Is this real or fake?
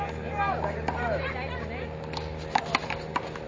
real